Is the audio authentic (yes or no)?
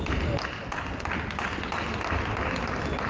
yes